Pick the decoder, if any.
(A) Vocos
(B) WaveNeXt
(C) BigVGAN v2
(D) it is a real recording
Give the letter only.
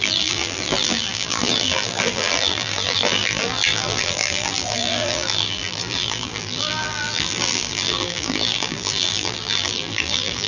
C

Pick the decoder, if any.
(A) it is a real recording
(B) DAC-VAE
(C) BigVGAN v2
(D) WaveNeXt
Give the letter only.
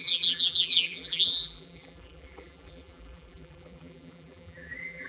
C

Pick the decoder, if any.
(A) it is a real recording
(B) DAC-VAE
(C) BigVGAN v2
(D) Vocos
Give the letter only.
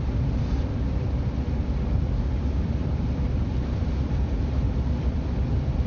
C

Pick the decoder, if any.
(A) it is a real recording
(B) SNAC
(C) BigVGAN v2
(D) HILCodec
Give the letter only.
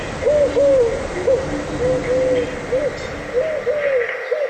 A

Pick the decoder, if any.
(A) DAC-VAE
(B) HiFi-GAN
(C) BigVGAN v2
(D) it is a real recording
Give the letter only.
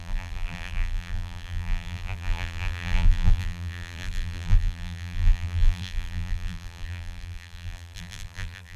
C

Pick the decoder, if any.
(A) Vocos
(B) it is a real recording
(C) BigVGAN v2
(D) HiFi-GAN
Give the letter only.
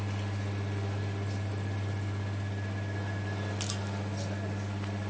B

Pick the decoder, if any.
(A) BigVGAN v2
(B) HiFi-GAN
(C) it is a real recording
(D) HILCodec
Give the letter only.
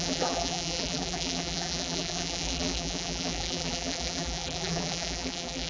A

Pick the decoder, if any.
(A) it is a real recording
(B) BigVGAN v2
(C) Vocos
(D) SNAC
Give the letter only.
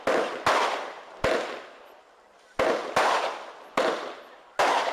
A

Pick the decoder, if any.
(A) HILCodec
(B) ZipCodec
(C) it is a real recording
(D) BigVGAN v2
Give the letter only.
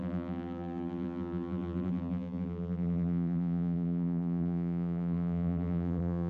D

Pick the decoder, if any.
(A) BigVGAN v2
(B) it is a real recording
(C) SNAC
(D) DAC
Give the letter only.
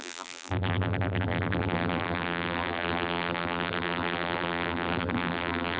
A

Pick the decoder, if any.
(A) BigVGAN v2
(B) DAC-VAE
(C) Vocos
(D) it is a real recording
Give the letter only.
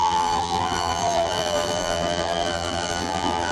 A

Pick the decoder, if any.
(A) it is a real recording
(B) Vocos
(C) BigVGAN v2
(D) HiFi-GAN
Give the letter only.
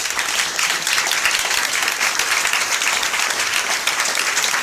A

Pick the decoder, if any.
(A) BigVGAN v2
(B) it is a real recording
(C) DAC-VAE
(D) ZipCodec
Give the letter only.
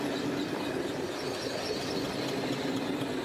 B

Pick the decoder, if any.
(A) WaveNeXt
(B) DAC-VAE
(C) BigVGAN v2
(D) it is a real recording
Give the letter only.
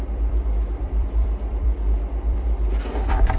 C